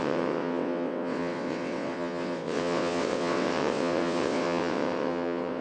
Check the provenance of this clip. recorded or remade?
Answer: remade